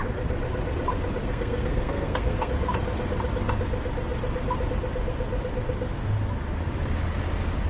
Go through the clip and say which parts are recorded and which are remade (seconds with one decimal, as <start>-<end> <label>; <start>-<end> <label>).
0.0-1.2 recorded; 1.2-2.5 remade; 2.5-7.7 recorded